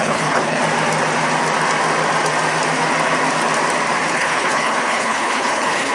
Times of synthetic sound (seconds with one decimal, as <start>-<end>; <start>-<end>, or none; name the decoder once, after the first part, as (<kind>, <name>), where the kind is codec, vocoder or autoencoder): 0.0-0.6 (codec, HILCodec); 4.1-5.9